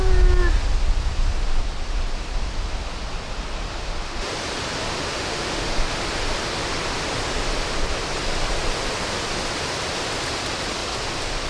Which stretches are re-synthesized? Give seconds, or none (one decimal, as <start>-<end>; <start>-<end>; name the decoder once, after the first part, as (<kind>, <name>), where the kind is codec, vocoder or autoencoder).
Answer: 3.7-4.3 (autoencoder, DAC-VAE); 5.1-5.9